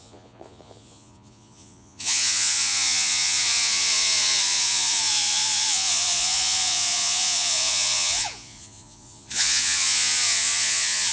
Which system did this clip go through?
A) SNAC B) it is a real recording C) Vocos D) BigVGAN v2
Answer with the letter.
C